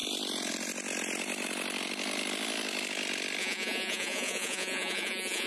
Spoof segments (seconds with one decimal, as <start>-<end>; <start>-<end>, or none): 3.4-5.5